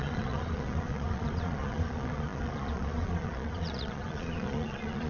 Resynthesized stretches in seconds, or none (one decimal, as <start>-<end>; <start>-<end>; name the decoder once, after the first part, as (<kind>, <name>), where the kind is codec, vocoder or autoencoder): 0.0-5.1 (vocoder, Vocos)

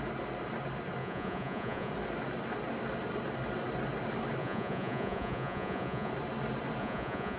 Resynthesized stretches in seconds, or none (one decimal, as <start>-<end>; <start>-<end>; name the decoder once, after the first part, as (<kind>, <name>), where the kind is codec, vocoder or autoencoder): 1.0-1.9 (vocoder, Vocos); 4.4-6.1; 6.8-7.4